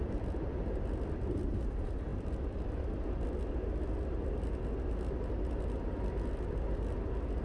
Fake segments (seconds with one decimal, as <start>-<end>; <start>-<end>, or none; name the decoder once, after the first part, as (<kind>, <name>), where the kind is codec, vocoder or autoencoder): none